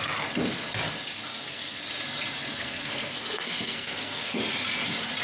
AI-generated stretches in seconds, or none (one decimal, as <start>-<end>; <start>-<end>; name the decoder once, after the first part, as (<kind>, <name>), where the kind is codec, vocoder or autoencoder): 1.3-1.8 (codec, SNAC); 2.5-4.4